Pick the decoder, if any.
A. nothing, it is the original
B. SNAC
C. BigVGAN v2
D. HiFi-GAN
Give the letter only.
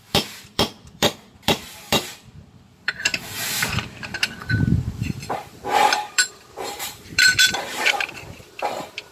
C